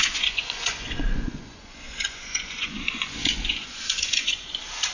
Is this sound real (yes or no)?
no